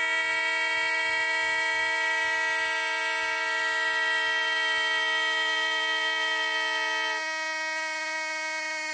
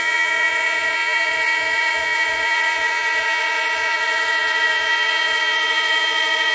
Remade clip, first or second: second